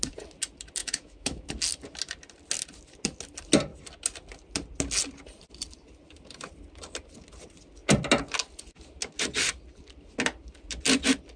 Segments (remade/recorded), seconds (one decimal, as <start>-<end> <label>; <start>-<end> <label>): 0.0-0.8 recorded; 0.8-1.5 remade; 1.5-11.4 recorded